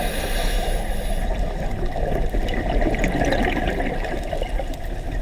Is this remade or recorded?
recorded